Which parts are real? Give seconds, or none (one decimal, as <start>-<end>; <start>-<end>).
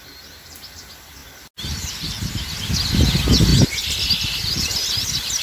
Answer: 0.0-5.4